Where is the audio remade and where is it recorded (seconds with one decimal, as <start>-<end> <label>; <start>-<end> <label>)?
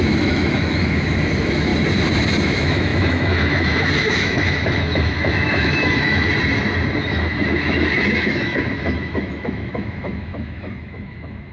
0.0-1.7 remade; 1.7-2.4 recorded; 2.4-6.3 remade; 6.3-7.0 recorded; 7.0-11.5 remade